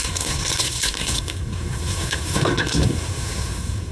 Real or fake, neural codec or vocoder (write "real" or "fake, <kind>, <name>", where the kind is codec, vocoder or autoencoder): fake, codec, SNAC